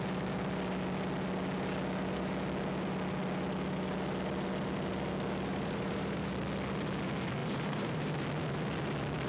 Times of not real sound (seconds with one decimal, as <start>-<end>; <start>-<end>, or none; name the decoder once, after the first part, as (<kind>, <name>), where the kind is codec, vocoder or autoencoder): 5.5-6.3 (vocoder, BigVGAN v2); 7.4-8.1